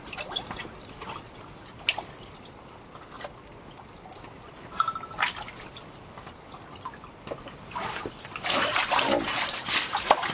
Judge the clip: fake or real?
real